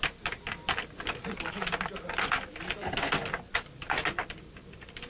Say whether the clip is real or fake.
real